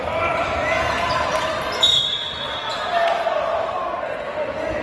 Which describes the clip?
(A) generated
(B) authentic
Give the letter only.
B